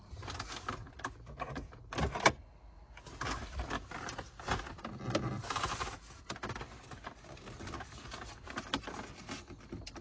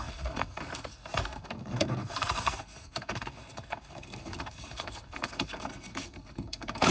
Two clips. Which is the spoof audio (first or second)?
second